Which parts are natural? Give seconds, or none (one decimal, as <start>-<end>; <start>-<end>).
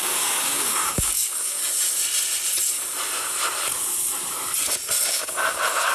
1.6-5.1